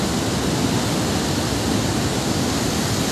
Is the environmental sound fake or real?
real